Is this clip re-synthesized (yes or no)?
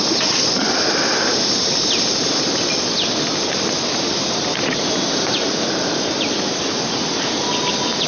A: no